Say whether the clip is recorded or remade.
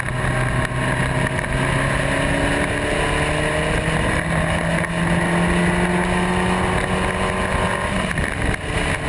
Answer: recorded